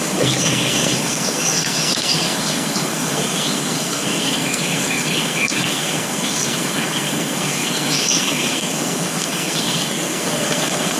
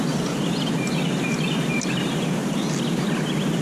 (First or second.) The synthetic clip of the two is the first